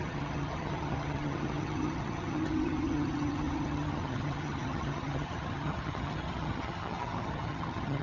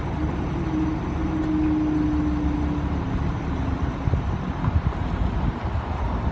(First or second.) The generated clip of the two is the first